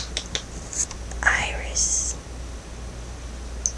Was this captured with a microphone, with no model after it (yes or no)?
yes